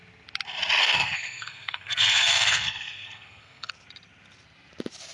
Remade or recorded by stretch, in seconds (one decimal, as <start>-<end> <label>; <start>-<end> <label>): 0.0-0.8 recorded; 0.8-3.7 remade; 3.7-5.1 recorded